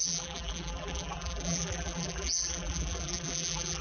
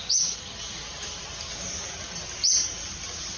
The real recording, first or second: second